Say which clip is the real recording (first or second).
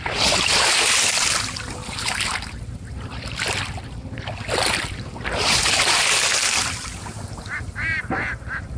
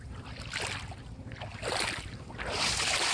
second